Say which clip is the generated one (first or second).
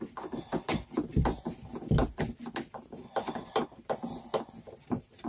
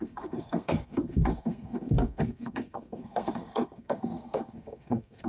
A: second